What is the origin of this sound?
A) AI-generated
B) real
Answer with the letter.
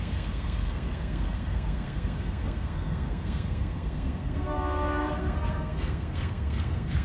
A